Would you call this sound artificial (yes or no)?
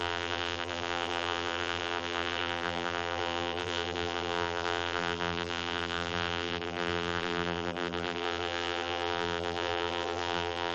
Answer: yes